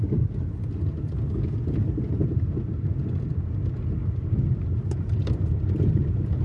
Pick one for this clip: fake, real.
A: real